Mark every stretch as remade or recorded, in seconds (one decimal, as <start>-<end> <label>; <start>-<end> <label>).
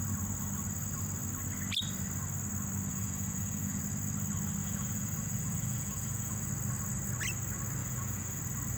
0.0-2.9 recorded; 2.9-3.8 remade; 3.8-4.6 recorded; 4.6-6.5 remade; 6.5-7.8 recorded; 7.8-8.4 remade; 8.4-8.8 recorded